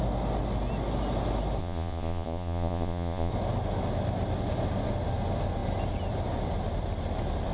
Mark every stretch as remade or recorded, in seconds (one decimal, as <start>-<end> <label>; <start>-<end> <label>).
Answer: 0.0-1.6 recorded; 1.6-3.3 remade; 3.3-7.5 recorded